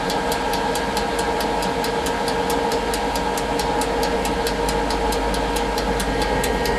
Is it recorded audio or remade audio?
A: recorded